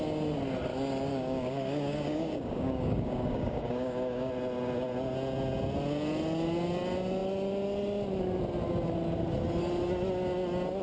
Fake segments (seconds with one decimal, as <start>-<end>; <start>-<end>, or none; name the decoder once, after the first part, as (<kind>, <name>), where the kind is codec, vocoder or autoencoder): 1.1-4.3 (codec, DAC)